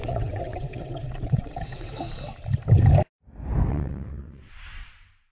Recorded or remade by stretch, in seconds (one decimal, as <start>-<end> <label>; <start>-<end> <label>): 0.0-2.0 remade; 2.0-3.7 recorded; 3.7-4.6 remade; 4.6-5.3 recorded